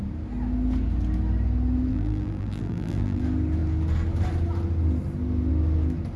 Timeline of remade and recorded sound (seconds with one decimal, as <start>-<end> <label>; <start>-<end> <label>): 0.0-1.9 recorded; 1.9-3.2 remade; 3.2-6.2 recorded